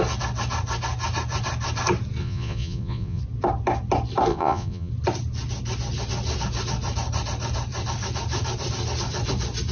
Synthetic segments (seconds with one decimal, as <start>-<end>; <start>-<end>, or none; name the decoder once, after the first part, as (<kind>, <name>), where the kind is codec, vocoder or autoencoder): 2.2-3.2 (vocoder, Vocos); 4.3-4.9